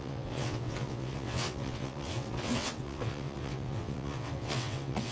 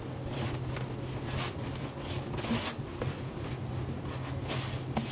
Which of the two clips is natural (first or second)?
second